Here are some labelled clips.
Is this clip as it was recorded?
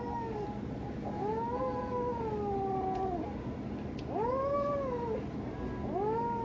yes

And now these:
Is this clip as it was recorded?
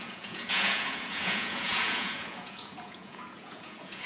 no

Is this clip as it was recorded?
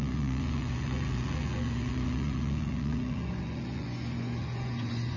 no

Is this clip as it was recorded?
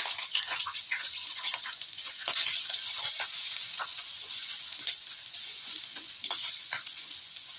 no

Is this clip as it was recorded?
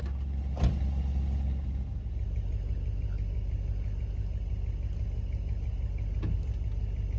yes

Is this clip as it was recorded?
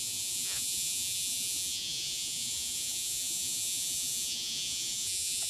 no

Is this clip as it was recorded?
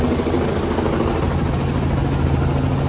yes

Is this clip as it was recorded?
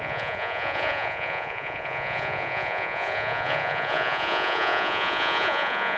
no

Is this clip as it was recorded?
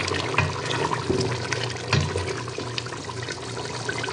yes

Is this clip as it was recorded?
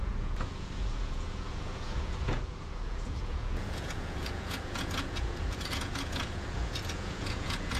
no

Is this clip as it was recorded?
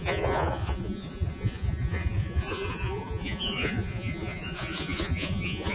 no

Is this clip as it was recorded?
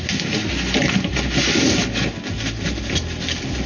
yes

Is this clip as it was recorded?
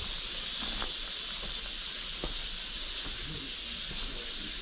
yes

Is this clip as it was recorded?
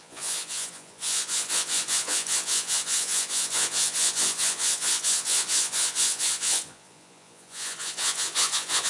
no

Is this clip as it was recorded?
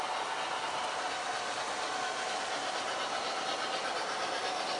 yes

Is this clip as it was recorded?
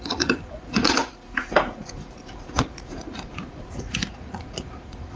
no